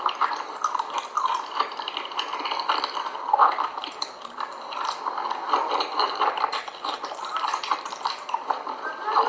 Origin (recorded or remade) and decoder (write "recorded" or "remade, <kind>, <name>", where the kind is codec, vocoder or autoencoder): recorded